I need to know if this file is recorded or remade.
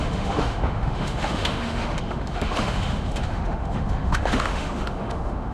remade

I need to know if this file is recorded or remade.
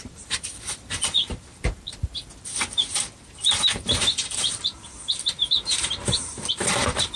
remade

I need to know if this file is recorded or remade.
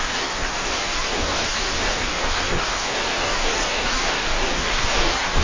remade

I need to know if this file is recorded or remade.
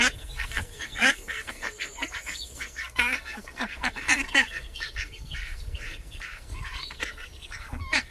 remade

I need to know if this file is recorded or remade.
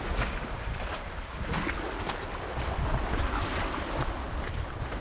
recorded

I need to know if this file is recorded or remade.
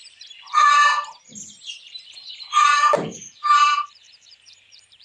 remade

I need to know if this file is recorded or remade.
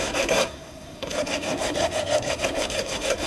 remade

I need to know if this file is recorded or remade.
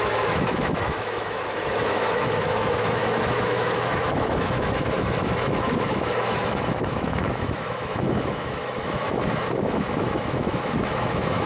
remade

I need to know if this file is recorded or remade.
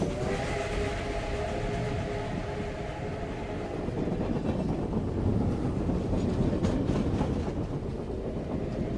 recorded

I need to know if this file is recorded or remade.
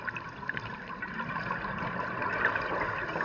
recorded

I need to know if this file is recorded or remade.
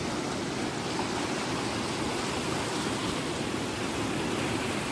recorded